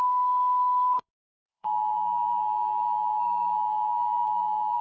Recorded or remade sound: remade